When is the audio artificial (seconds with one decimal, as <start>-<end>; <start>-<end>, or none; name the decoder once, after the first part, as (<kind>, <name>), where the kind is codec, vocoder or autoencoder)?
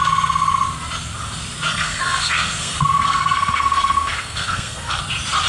1.7-5.0 (codec, SNAC)